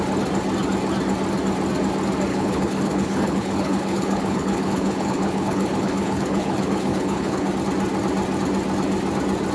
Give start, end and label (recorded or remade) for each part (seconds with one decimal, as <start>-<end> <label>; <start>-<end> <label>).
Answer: 0.0-2.3 recorded; 2.3-7.5 remade; 7.5-9.5 recorded